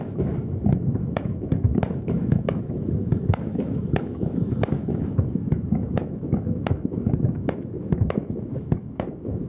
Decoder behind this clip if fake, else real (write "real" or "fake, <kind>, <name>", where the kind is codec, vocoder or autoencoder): fake, autoencoder, DAC-VAE